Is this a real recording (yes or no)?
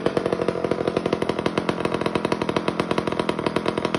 yes